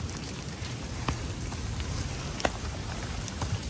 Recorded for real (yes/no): no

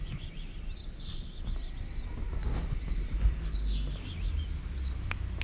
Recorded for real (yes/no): yes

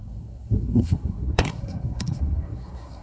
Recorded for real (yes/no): no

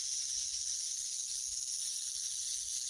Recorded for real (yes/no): yes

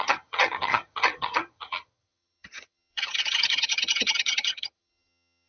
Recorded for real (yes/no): no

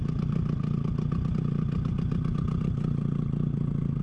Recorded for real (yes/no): yes